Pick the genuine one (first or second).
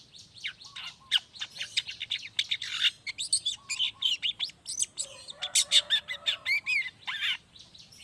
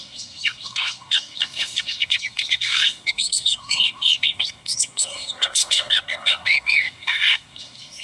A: first